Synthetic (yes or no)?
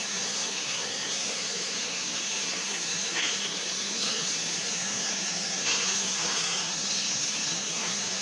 yes